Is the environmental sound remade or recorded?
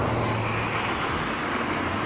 recorded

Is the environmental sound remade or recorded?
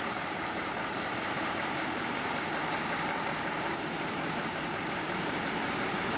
remade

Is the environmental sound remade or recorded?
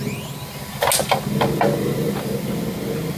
recorded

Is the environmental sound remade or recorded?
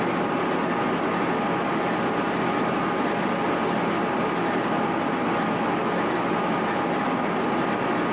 recorded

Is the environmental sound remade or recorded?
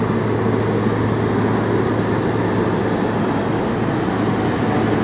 recorded